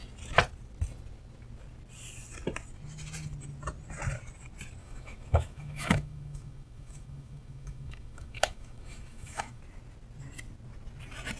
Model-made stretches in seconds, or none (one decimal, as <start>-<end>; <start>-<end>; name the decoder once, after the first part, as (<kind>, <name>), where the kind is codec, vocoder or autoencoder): 4.8-9.6 (autoencoder, DAC-VAE)